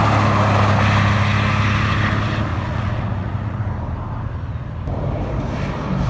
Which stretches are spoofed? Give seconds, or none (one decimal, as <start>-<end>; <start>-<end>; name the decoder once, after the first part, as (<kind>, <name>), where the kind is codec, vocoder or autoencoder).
2.5-3.7 (vocoder, Vocos)